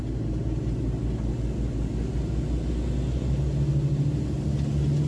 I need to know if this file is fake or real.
real